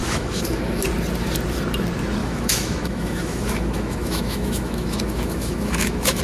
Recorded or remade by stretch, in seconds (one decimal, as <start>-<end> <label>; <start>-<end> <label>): 0.0-0.8 remade; 0.8-2.2 recorded; 2.2-6.2 remade